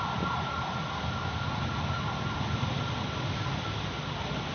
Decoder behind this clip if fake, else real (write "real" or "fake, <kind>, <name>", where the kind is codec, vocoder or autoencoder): real